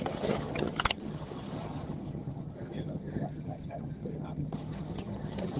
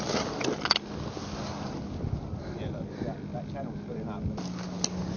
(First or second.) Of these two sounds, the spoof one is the first